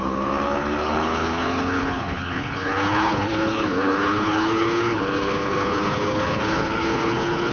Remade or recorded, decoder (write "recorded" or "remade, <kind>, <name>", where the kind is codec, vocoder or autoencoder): remade, codec, HILCodec